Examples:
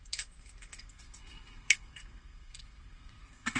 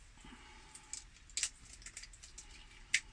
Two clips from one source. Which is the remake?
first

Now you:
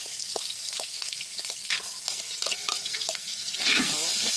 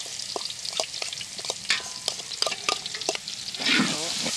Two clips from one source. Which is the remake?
first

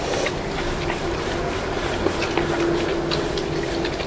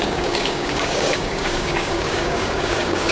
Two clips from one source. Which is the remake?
second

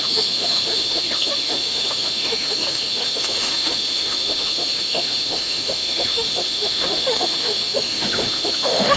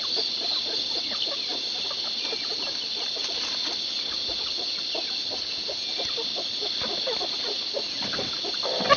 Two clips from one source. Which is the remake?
first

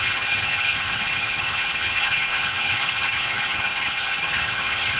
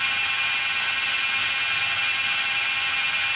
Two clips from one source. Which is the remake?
first